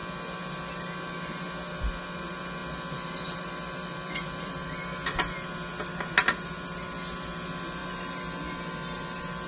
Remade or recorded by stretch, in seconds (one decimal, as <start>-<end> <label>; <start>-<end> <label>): 0.0-2.6 recorded; 2.6-4.5 remade; 4.5-9.5 recorded